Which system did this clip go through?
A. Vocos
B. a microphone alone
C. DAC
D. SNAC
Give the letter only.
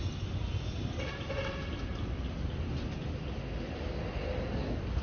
B